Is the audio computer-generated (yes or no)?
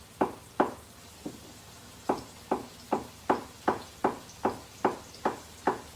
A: no